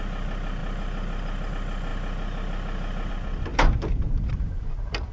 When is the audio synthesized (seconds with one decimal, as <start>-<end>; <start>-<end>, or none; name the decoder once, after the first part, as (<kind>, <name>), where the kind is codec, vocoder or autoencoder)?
3.5-5.1 (vocoder, BigVGAN v2)